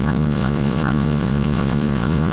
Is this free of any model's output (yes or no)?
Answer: no